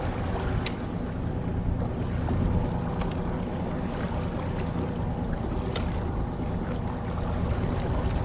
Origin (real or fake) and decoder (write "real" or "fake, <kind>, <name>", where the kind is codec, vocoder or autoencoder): real